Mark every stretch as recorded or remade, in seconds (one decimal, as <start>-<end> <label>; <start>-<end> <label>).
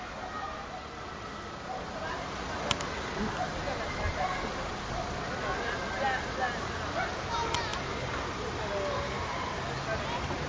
0.0-10.5 recorded